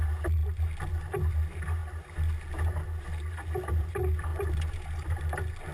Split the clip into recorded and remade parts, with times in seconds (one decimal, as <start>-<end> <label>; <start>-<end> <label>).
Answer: 0.0-5.7 recorded